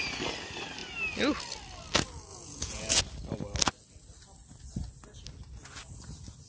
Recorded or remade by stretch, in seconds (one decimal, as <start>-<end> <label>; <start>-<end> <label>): 0.0-2.3 recorded; 2.3-3.0 remade; 3.0-6.5 recorded